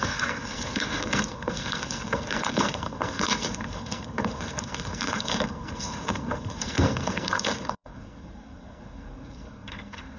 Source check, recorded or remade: remade